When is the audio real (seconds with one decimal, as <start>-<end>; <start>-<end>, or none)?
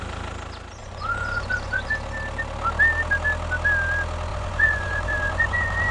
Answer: 0.0-0.8; 1.9-4.3